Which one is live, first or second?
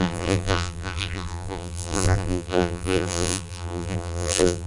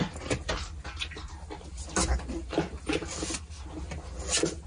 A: second